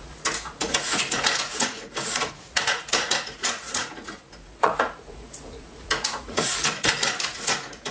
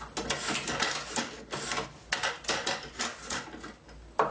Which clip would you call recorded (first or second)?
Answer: second